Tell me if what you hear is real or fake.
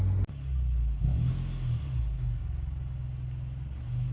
real